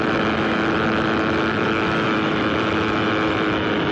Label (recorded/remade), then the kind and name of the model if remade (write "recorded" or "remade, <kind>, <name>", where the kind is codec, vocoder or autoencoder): remade, autoencoder, DAC-VAE